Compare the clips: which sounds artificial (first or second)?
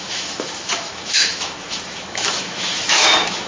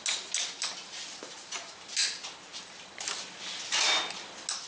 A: first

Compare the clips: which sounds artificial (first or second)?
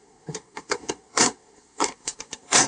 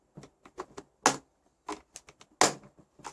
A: first